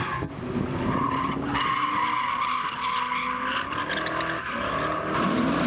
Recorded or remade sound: recorded